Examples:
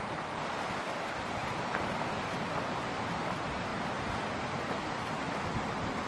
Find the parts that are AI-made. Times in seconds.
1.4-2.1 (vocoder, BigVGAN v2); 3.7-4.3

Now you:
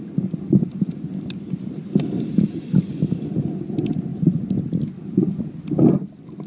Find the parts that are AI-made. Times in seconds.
0.0-4.1 (vocoder, BigVGAN v2); 5.4-6.5